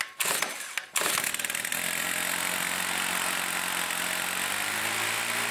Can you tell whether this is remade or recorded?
recorded